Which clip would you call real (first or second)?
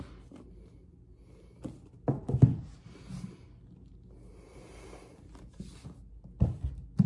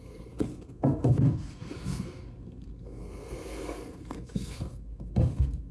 first